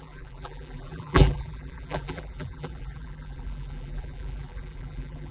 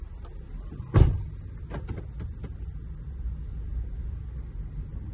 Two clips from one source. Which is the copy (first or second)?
first